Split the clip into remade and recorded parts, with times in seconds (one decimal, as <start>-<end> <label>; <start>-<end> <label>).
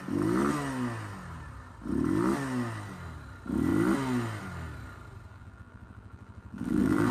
0.0-5.3 recorded; 5.3-7.1 remade